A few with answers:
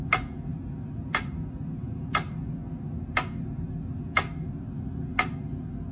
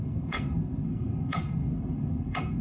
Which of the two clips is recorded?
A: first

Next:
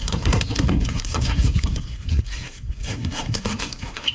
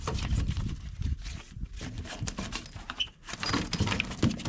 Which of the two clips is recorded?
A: second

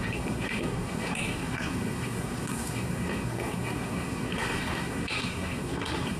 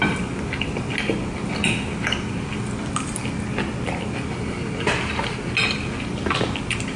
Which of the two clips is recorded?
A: second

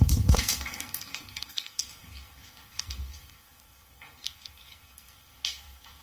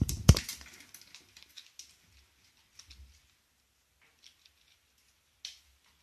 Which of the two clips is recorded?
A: second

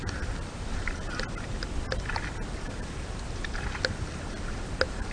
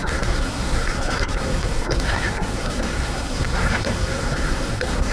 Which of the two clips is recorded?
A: first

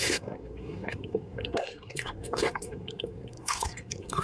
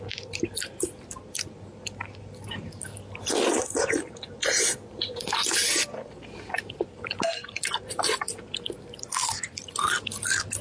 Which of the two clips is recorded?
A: second